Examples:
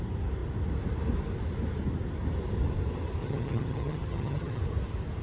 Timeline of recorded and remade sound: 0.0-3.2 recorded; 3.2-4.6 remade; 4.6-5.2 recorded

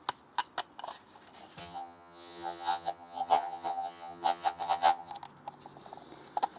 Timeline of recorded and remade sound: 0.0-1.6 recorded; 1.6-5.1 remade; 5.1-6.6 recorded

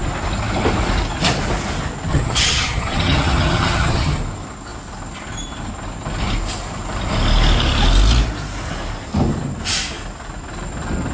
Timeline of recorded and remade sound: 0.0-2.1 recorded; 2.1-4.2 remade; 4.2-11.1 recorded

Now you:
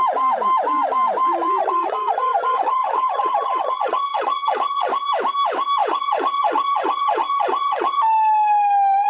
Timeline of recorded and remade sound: 0.0-1.6 recorded; 1.6-4.9 remade; 4.9-5.8 recorded; 5.8-8.0 remade; 8.0-9.1 recorded

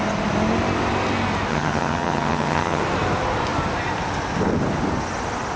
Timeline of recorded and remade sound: 0.0-1.5 recorded; 1.5-2.8 remade; 2.8-5.6 recorded

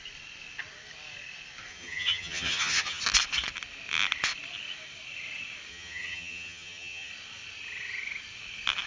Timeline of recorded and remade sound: 0.0-1.7 recorded; 1.7-3.0 remade; 3.0-5.7 recorded; 5.7-7.1 remade; 7.1-8.9 recorded

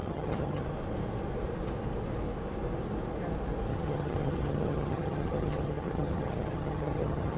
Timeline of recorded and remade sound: 0.0-0.7 remade; 0.7-3.7 recorded; 3.7-7.4 remade